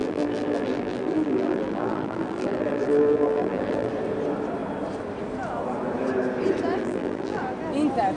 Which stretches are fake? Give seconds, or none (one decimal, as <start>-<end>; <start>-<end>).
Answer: 0.0-3.9; 6.8-7.4